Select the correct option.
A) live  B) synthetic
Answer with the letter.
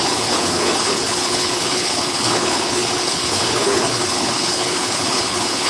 B